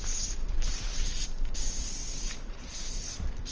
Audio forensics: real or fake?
fake